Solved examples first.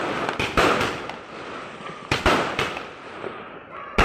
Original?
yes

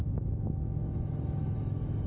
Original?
no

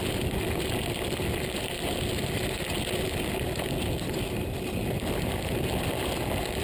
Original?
yes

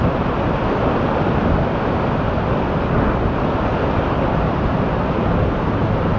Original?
yes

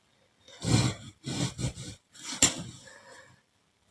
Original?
yes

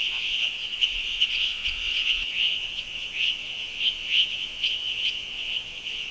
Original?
no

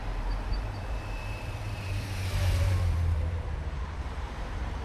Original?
no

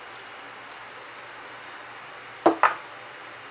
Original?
yes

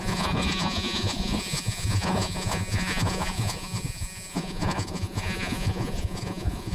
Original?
no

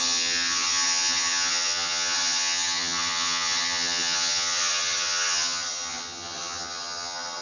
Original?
no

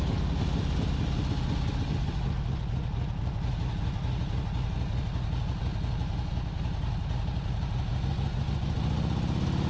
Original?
yes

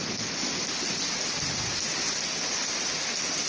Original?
yes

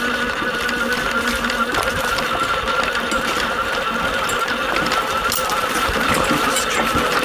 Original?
yes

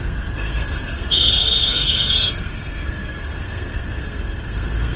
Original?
no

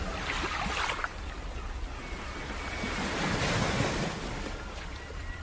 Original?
yes